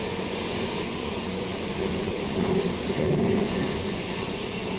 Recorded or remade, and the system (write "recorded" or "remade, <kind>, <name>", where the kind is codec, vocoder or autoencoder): remade, vocoder, Vocos